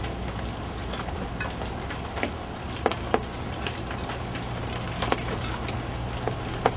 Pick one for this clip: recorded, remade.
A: recorded